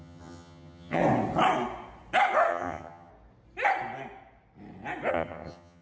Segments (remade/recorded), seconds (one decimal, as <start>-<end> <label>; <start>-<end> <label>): 0.0-1.0 remade; 1.0-2.5 recorded; 2.5-3.1 remade; 3.1-5.1 recorded; 5.1-5.8 remade